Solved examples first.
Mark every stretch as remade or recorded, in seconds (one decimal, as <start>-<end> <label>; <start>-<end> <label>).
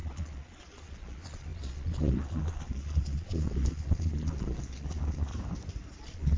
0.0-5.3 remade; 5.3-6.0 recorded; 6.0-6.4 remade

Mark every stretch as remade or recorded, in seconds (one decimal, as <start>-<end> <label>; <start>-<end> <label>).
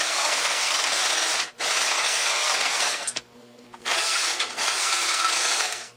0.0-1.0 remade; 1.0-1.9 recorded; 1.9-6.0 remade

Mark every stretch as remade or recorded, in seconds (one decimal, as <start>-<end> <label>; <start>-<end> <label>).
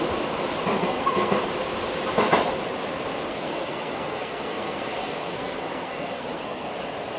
0.0-0.8 recorded; 0.8-1.4 remade; 1.4-3.3 recorded; 3.3-6.7 remade; 6.7-7.2 recorded